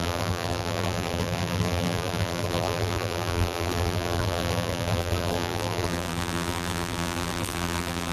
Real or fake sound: fake